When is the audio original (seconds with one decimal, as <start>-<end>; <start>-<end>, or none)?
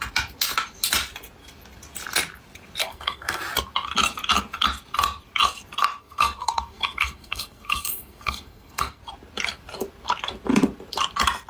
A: 0.0-2.8; 3.4-6.0; 9.0-11.5